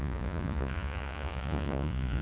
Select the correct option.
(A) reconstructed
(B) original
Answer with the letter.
A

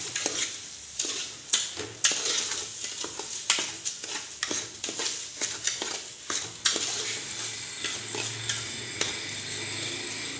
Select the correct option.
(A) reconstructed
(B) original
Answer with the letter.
B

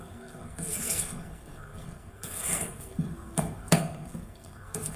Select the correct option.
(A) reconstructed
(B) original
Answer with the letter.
A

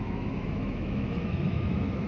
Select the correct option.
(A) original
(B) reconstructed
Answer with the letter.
B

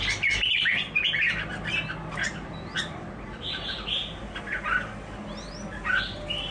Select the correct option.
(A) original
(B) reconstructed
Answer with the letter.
A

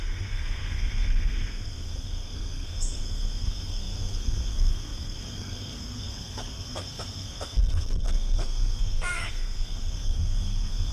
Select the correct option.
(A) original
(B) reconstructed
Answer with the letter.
B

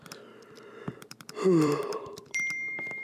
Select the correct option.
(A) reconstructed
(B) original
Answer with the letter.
A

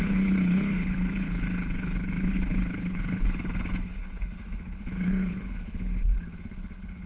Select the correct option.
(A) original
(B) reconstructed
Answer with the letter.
B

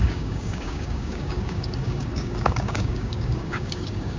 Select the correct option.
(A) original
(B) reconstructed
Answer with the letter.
B